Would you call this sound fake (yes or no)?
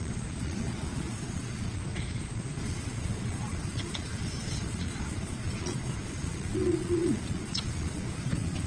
yes